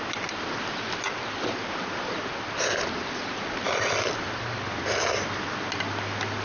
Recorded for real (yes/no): yes